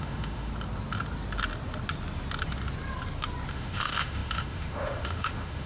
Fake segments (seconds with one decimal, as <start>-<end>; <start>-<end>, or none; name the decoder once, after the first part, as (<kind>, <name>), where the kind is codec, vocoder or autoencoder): 0.0-0.5 (autoencoder, DAC-VAE); 3.5-5.7